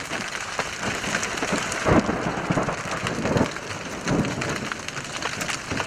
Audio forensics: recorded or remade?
recorded